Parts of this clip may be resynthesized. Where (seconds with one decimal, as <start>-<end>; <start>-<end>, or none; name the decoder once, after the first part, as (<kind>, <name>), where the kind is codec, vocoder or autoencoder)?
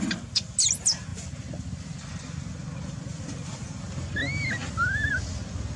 none